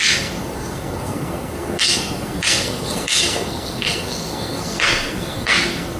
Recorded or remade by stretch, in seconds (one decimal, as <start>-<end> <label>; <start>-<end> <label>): 0.0-6.0 remade